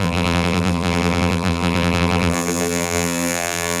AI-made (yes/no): yes